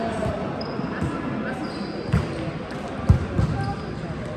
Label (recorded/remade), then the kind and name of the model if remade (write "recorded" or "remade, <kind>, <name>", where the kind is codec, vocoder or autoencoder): recorded